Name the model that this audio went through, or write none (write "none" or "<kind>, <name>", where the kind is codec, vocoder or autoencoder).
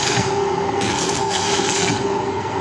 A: codec, SNAC